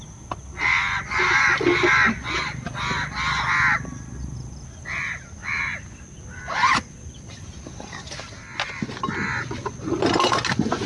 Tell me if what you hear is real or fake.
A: real